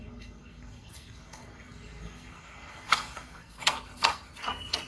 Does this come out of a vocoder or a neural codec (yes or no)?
yes